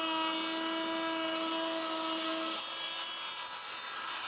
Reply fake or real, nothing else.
real